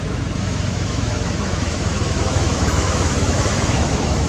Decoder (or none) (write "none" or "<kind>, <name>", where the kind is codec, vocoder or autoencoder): autoencoder, DAC-VAE